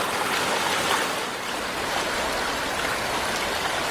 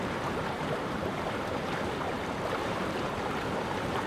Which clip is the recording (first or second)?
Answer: first